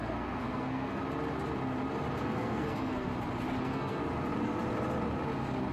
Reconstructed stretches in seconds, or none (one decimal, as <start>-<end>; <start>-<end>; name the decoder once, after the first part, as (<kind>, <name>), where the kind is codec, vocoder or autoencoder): 0.0-1.0 (codec, SNAC); 2.2-3.1; 3.6-4.0